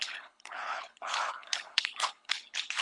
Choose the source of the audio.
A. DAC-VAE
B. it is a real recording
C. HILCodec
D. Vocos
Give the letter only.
C